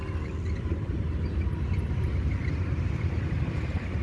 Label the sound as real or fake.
real